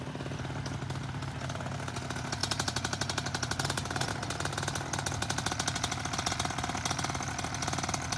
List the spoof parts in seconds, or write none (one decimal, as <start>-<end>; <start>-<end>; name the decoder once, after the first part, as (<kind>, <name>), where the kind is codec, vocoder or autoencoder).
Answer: 2.4-4.1 (vocoder, BigVGAN v2)